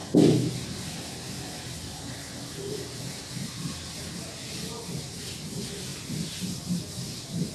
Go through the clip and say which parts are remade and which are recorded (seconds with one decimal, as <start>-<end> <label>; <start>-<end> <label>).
0.0-7.5 recorded